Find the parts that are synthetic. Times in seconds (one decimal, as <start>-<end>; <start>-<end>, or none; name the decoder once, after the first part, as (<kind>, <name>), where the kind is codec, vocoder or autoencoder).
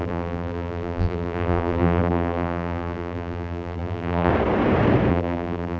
0.0-4.3 (vocoder, BigVGAN v2); 5.1-5.8